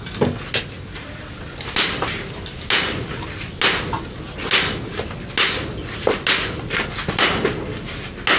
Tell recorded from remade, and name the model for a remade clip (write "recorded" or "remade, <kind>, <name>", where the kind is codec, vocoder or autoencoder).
recorded